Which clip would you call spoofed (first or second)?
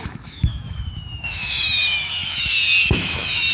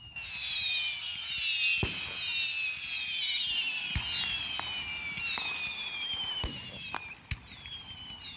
first